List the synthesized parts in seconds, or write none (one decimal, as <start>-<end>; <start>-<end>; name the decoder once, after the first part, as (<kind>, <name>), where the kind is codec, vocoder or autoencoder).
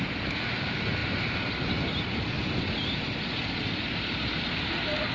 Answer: none